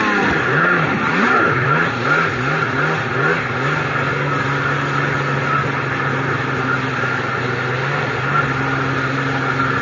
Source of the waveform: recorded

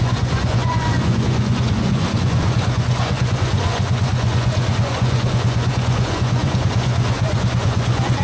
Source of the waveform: remade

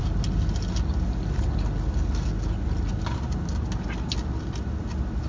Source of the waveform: recorded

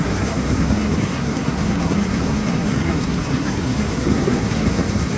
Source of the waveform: remade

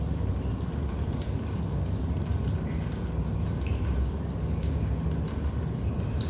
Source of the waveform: recorded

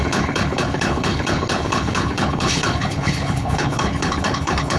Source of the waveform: remade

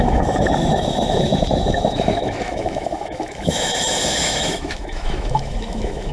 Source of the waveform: remade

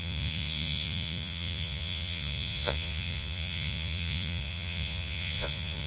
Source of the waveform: remade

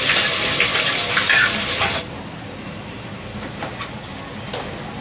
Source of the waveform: recorded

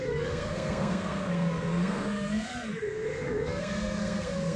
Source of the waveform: remade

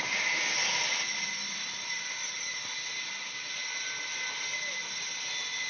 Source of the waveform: recorded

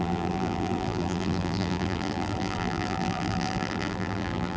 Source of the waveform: remade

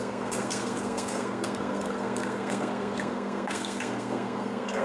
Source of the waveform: remade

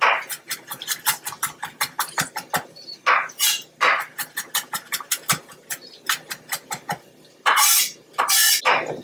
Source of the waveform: recorded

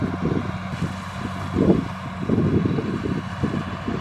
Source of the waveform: recorded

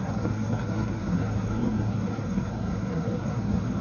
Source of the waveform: remade